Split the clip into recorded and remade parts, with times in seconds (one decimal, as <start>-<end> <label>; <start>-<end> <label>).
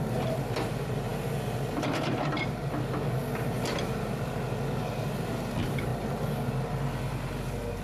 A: 0.0-7.8 recorded